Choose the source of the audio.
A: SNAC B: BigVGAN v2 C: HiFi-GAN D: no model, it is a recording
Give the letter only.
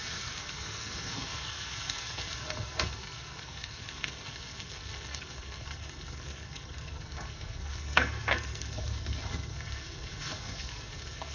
A